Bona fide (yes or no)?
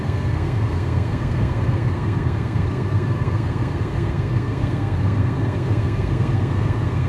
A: no